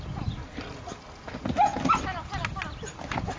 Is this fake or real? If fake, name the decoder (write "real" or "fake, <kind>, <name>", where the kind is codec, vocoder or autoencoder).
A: real